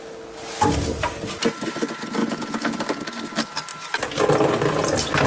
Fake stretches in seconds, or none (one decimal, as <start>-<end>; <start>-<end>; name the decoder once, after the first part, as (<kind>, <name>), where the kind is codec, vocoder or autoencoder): 2.2-2.8 (vocoder, Vocos)